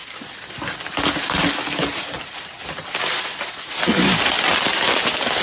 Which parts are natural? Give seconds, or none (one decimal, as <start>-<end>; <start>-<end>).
0.0-5.4